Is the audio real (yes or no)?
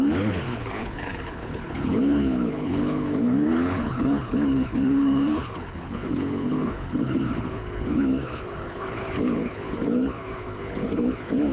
no